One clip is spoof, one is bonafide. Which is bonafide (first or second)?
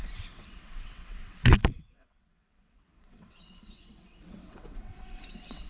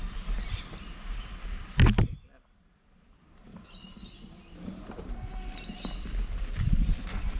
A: second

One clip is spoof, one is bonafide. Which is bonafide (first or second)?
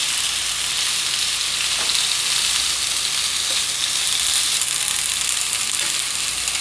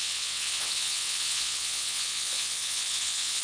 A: first